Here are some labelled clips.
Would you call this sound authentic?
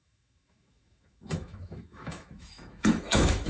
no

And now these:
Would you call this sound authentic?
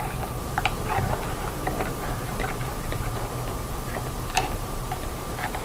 no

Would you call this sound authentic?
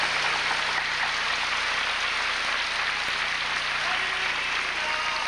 yes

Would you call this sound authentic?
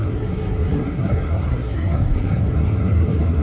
no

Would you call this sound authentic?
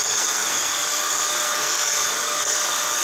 no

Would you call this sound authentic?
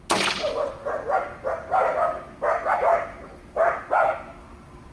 yes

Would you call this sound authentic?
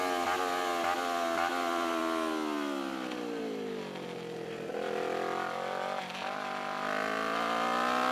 yes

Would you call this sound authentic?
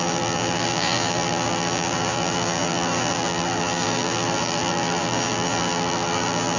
no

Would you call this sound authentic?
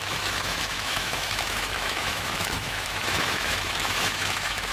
no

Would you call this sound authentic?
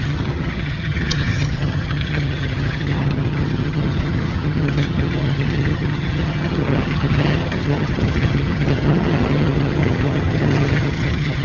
no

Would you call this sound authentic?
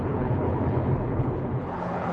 no